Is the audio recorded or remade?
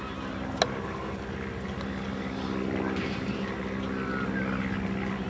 recorded